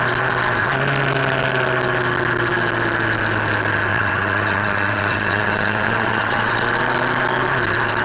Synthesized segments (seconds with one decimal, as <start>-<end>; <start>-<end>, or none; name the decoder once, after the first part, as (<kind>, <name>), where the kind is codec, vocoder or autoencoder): 3.9-6.7 (vocoder, WaveNeXt)